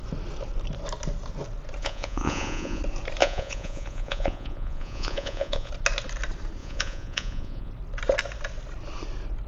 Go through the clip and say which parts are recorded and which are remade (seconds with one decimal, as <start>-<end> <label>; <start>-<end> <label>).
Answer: 0.0-1.8 recorded; 1.8-2.8 remade; 2.8-3.2 recorded; 3.2-5.7 remade; 5.7-6.6 recorded; 6.6-7.7 remade; 7.7-9.5 recorded